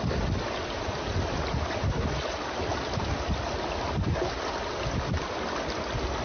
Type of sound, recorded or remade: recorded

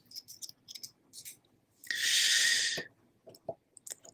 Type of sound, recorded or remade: recorded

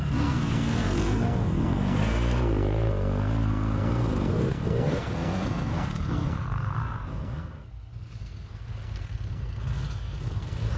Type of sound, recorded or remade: remade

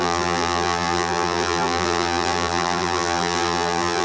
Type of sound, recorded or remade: remade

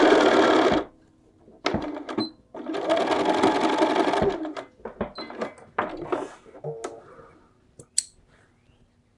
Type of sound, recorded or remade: recorded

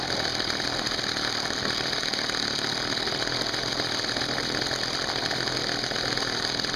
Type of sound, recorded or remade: recorded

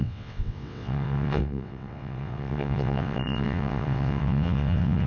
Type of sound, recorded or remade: remade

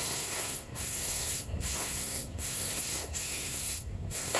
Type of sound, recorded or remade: remade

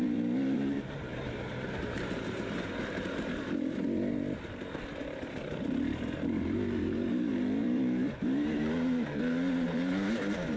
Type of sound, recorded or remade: remade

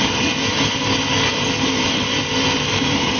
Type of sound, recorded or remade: recorded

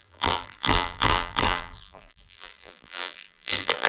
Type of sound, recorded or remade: remade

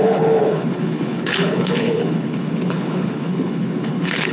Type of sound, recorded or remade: remade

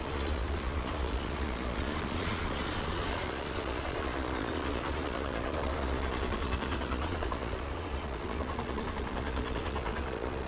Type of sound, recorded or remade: remade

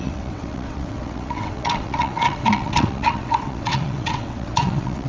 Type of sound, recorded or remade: remade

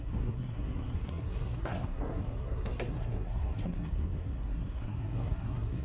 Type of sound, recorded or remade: remade